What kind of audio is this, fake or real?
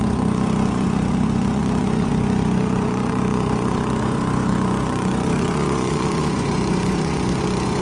fake